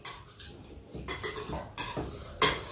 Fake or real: real